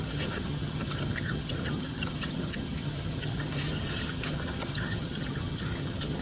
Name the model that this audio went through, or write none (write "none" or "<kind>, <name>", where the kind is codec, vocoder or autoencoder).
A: vocoder, HiFi-GAN